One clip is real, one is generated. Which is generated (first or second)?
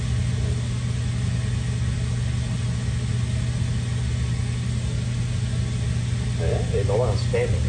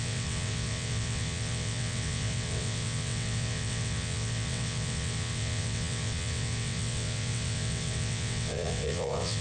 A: second